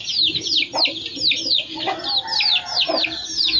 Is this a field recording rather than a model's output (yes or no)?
yes